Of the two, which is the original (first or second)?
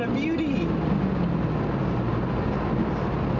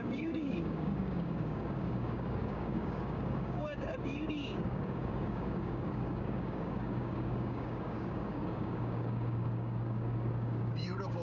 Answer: first